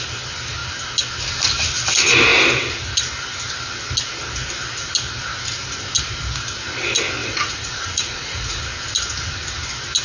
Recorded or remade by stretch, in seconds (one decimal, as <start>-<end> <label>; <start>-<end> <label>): 0.0-7.2 recorded; 7.2-8.6 remade; 8.6-10.0 recorded